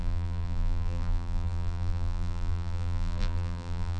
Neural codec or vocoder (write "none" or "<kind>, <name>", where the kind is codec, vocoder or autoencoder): vocoder, BigVGAN v2